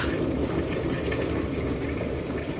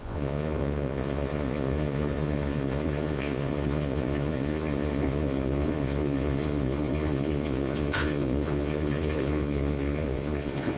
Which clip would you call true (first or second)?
first